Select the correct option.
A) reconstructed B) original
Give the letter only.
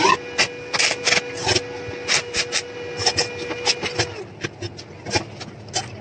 B